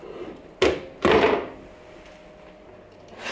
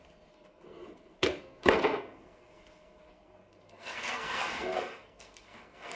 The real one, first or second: first